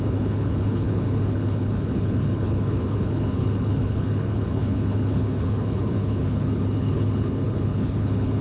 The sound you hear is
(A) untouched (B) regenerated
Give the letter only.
B